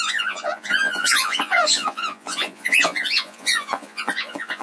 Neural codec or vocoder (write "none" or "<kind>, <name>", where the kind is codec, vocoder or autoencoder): vocoder, Vocos